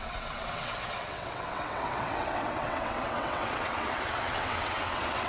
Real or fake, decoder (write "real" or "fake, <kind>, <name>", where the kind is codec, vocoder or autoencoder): fake, vocoder, WaveNeXt